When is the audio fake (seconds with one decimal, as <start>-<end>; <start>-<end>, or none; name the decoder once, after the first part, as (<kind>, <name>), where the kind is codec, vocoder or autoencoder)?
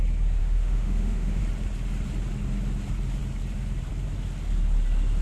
0.4-1.4 (autoencoder, DAC-VAE)